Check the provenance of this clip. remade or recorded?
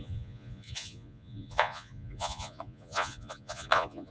remade